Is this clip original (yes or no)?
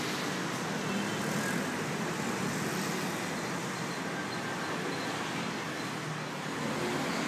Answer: yes